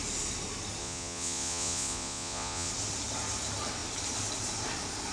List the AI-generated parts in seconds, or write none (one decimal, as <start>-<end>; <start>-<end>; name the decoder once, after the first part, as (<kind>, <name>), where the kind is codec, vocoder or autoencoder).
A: 0.8-2.7 (vocoder, Vocos)